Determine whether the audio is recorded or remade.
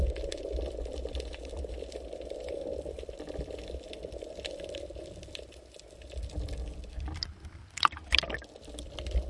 recorded